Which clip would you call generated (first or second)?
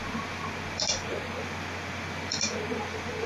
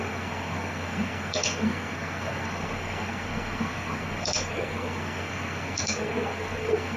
second